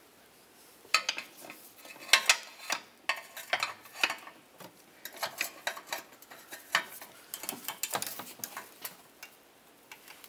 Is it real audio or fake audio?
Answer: real